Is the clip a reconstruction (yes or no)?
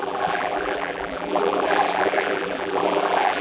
yes